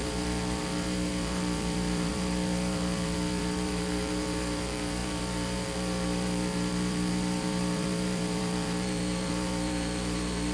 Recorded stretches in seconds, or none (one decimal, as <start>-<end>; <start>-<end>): none